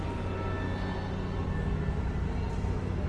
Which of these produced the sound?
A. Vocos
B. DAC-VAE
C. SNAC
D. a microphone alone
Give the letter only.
D